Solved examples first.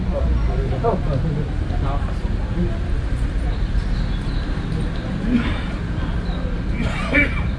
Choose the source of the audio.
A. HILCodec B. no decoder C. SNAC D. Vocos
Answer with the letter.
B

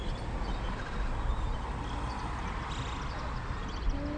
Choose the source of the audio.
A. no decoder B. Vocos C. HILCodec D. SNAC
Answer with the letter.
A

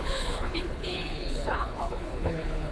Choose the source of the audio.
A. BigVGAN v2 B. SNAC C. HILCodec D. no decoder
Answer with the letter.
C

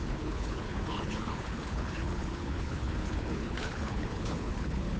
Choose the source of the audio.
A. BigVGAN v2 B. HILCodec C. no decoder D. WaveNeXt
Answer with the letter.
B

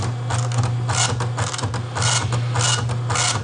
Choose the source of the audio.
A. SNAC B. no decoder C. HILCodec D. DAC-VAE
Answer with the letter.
B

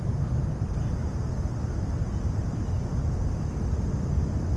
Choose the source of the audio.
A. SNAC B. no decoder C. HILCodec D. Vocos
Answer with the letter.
B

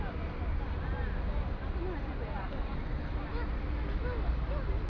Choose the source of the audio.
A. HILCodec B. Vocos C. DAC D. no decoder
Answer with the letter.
D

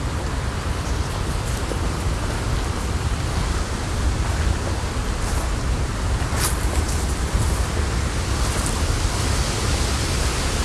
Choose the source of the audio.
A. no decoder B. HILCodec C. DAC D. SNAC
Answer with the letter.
A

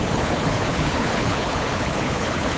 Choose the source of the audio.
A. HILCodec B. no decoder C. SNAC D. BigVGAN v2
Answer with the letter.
A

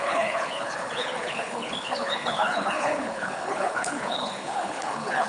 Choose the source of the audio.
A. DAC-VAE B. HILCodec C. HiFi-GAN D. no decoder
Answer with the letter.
B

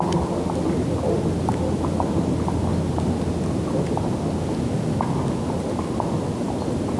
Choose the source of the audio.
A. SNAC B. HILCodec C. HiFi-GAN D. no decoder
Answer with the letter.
D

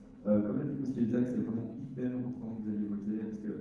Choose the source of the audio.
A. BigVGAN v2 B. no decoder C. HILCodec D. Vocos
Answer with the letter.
C